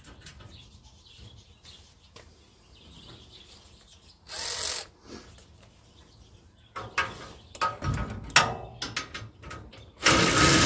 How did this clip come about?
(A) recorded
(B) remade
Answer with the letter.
A